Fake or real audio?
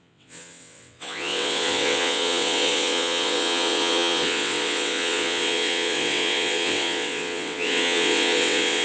fake